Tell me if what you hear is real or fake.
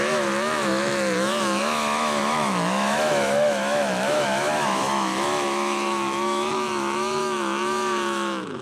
fake